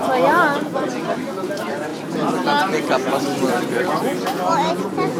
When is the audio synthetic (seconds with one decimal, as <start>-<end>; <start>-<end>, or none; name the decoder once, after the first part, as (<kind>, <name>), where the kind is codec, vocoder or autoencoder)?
none